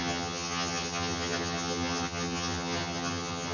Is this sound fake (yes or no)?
yes